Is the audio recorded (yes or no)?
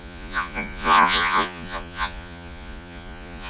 no